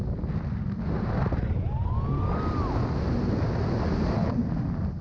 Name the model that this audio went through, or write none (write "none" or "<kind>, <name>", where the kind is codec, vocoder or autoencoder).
none